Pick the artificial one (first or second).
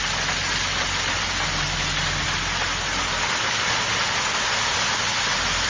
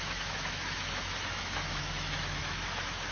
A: second